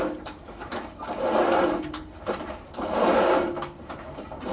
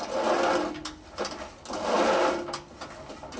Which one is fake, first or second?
first